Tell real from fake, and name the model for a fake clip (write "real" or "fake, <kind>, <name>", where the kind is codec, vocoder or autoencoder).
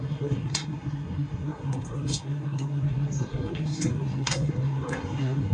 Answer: fake, codec, SNAC